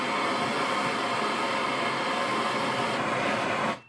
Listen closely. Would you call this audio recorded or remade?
recorded